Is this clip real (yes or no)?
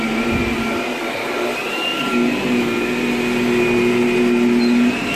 yes